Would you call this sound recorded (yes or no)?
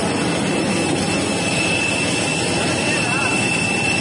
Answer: yes